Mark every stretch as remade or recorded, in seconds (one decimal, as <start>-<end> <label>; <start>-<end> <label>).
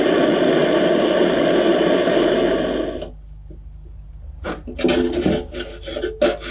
0.0-6.5 recorded